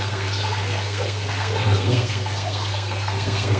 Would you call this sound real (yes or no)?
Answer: no